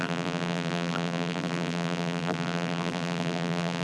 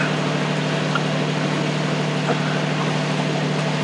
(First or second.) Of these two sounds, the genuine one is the second